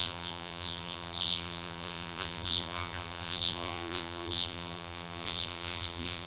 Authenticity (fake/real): fake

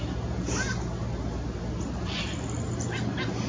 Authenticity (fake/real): real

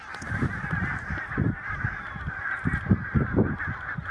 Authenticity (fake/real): fake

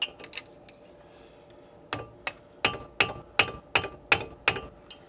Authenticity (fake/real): real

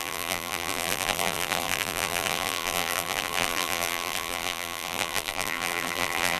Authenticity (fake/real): fake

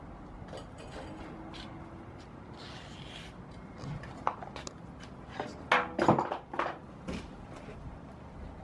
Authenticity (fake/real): real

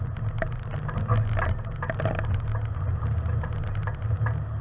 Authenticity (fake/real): real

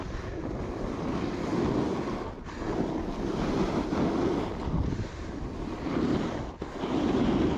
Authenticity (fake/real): real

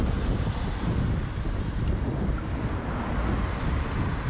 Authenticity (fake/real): real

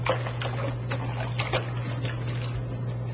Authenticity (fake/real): real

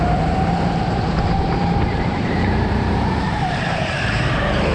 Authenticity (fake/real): fake